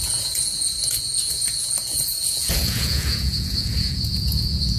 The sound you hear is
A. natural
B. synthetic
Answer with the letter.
B